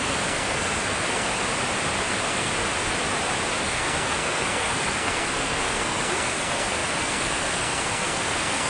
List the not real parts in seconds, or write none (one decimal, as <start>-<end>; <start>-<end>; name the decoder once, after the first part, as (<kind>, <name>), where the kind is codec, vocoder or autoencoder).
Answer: 0.0-1.3 (codec, SNAC); 2.1-2.5; 3.6-8.7